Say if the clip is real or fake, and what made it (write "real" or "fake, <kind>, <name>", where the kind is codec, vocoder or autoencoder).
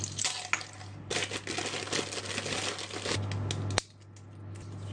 real